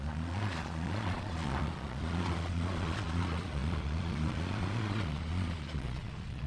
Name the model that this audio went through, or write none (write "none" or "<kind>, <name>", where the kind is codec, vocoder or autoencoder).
vocoder, Vocos